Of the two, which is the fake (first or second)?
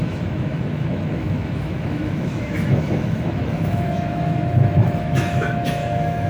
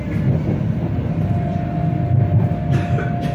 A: first